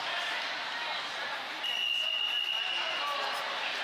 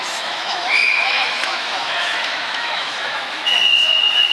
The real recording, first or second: first